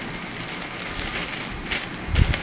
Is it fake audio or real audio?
real